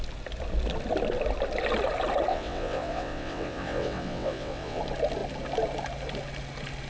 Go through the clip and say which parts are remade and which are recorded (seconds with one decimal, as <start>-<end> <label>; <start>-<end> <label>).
0.0-2.3 recorded; 2.3-4.8 remade; 4.8-6.9 recorded